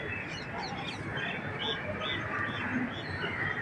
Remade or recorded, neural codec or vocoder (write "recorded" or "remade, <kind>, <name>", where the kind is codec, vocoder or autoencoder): recorded